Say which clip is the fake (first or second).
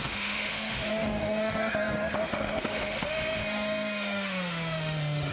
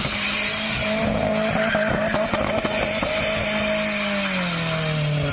first